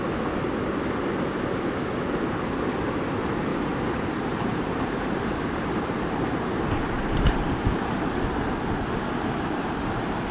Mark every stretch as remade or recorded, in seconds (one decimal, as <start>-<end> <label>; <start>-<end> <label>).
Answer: 0.0-3.5 recorded; 3.5-7.6 remade; 7.6-10.3 recorded